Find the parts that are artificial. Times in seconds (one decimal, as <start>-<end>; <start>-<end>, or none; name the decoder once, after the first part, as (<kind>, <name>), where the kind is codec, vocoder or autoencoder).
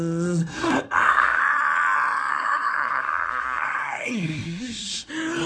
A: 0.4-1.4 (codec, SNAC); 2.3-5.1